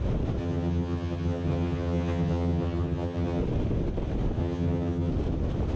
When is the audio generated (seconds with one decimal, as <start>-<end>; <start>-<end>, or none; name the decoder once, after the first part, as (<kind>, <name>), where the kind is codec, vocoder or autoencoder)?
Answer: 0.4-3.4 (vocoder, HiFi-GAN); 4.4-5.1